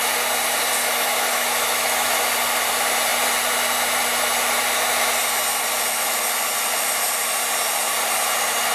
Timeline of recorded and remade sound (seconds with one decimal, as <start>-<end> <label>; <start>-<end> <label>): 0.0-0.8 recorded; 0.8-2.1 remade; 2.1-8.7 recorded